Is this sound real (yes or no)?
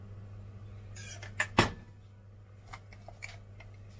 yes